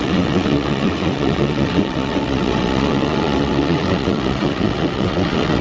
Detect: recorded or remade remade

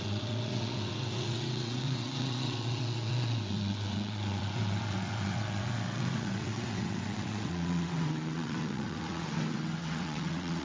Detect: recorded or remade remade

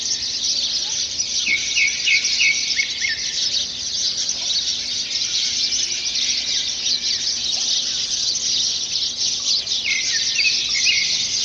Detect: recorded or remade recorded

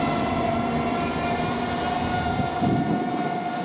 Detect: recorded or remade recorded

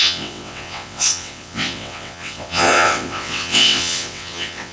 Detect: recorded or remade remade